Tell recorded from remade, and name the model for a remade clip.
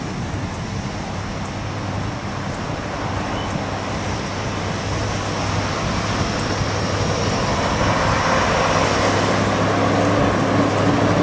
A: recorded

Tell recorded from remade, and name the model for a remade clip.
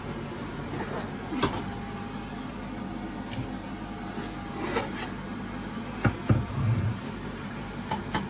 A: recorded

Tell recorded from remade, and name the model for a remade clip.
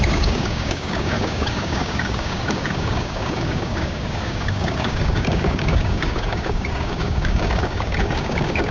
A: remade, codec, DAC